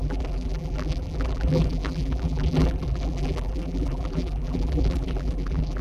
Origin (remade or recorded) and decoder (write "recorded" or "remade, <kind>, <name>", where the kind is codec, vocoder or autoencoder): remade, vocoder, BigVGAN v2